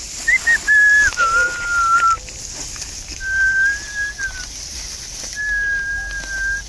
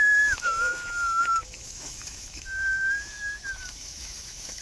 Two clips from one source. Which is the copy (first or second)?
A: second